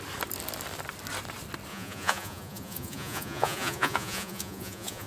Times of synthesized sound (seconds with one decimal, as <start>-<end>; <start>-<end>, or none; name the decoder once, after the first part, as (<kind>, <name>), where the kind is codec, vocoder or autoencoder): 1.7-5.1 (vocoder, Vocos)